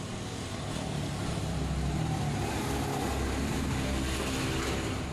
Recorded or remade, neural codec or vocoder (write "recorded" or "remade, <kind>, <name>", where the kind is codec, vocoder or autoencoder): recorded